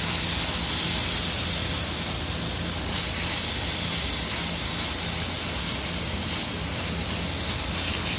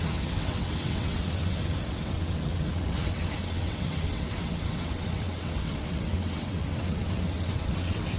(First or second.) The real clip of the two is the first